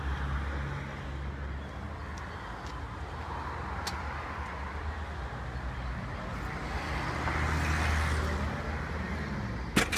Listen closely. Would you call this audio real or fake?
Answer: real